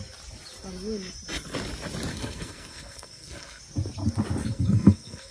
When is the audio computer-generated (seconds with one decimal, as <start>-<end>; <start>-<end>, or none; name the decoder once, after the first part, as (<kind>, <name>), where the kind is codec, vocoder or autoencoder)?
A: 2.1-3.6 (codec, SNAC); 4.4-5.3